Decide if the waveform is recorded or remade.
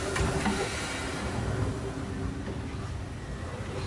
recorded